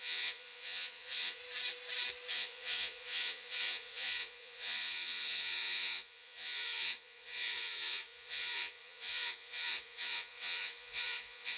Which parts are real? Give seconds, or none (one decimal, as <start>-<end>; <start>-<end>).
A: 1.4-2.3